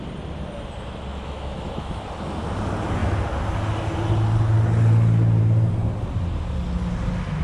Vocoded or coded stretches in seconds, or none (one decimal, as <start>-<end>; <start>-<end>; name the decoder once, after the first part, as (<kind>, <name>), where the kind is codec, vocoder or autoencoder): 1.1-2.0 (autoencoder, DAC-VAE)